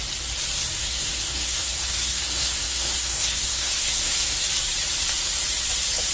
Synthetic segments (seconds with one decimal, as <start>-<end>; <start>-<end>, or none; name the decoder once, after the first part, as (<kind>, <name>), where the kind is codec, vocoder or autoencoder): 0.8-4.4 (codec, SNAC)